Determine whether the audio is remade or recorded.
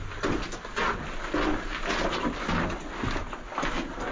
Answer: recorded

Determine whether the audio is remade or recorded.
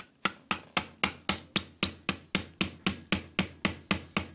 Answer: recorded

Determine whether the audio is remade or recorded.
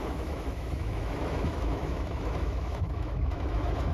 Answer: remade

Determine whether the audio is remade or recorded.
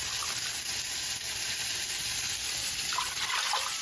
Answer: recorded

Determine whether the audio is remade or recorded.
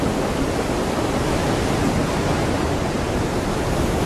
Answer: recorded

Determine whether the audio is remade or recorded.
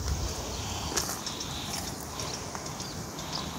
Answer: recorded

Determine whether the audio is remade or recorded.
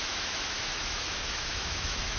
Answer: remade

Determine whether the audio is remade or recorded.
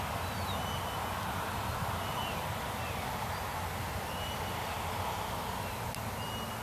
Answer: recorded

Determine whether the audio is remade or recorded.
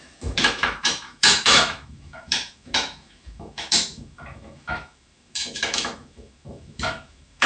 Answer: remade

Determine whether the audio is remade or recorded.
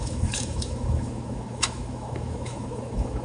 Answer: remade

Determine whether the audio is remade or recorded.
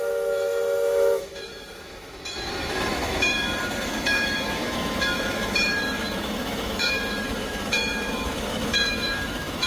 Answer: remade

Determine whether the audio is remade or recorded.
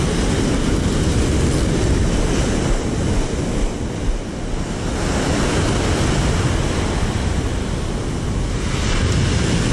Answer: recorded